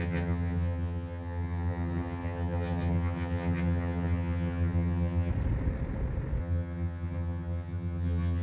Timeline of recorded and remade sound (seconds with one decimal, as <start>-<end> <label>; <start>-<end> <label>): 0.0-5.3 remade; 5.3-6.4 recorded; 6.4-8.4 remade